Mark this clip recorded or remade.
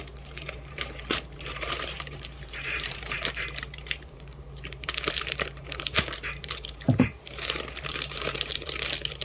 remade